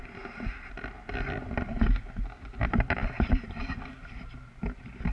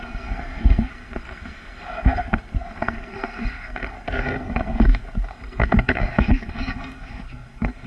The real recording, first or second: first